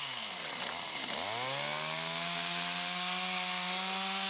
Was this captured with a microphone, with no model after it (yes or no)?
yes